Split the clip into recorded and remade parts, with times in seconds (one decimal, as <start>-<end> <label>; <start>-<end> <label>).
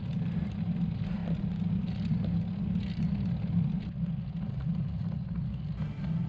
0.0-6.3 recorded